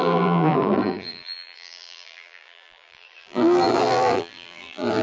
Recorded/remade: remade